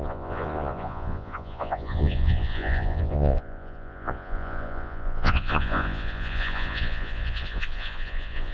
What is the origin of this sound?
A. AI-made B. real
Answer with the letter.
A